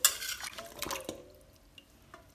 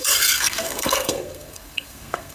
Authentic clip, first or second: first